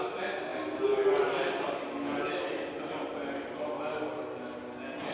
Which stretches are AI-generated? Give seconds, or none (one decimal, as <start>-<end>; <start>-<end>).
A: none